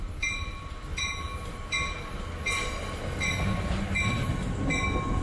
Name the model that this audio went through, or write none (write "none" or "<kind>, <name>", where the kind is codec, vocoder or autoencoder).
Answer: none